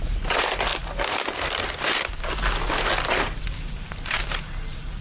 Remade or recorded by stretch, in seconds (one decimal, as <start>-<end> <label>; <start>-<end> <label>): 0.0-0.7 remade; 0.7-3.7 recorded; 3.7-5.0 remade